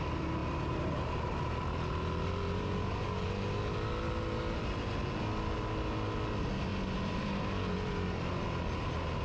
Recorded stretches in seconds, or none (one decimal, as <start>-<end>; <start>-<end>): 0.0-9.2